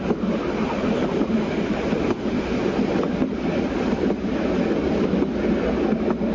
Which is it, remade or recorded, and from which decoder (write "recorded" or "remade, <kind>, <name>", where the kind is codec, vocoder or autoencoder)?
recorded